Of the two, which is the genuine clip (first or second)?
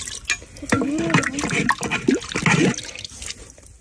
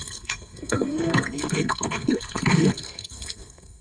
first